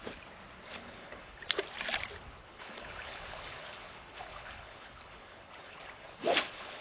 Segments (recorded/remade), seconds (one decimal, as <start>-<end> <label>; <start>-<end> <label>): 0.0-0.7 recorded; 0.7-1.4 remade; 1.4-2.5 recorded; 2.5-6.8 remade